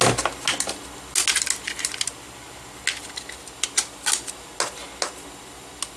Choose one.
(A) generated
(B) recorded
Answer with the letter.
B